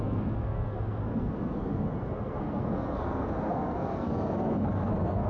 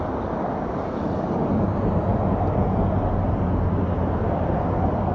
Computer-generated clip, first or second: first